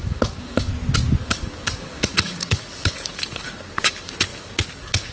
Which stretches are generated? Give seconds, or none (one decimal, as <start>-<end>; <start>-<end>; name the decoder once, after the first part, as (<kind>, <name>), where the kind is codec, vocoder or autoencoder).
0.0-0.7 (codec, DAC); 1.2-5.1